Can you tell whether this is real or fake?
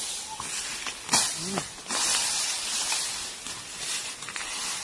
real